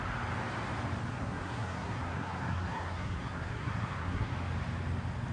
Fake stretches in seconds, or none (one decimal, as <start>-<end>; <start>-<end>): 1.1-4.3